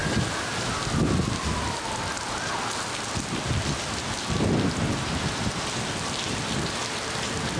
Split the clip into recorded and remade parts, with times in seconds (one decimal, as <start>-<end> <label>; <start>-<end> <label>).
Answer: 0.0-7.6 recorded